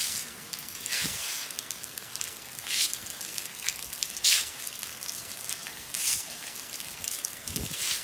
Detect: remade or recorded remade